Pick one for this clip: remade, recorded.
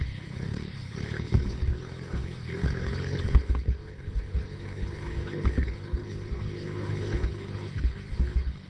remade